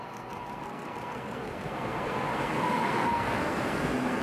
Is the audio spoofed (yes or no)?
yes